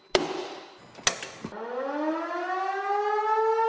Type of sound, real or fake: real